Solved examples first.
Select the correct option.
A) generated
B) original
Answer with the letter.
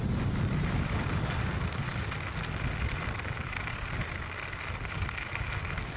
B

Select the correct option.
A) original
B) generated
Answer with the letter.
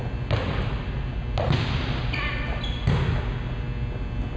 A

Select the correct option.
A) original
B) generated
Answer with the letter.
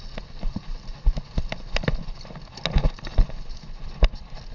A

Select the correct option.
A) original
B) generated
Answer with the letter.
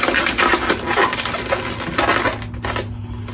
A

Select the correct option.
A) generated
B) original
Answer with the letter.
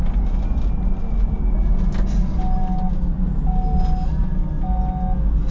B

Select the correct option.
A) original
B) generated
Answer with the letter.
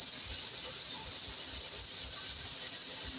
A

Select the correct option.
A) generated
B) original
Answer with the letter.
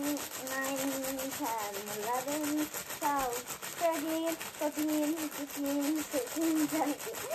B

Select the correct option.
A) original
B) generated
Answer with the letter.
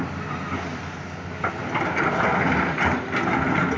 A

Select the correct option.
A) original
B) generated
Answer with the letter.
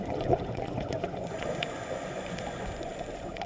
B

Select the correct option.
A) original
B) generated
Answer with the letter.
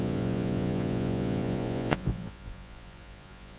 B